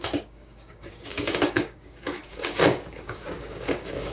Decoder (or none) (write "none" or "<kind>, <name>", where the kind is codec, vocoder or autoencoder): codec, DAC